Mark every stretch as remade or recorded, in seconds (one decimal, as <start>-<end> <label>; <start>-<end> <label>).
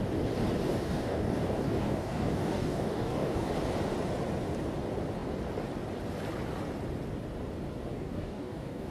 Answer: 0.0-0.7 recorded; 0.7-3.5 remade; 3.5-7.9 recorded; 7.9-8.9 remade